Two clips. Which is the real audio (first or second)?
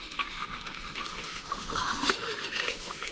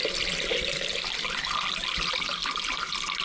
second